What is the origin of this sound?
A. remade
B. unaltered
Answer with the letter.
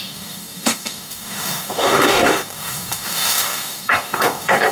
A